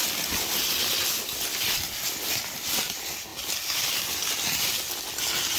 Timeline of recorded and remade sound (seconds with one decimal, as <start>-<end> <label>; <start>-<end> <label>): 0.0-5.6 recorded